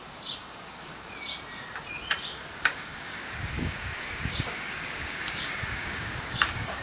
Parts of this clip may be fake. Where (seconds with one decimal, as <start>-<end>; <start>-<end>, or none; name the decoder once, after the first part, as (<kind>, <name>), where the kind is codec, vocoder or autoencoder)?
0.4-1.1 (codec, DAC); 2.7-6.8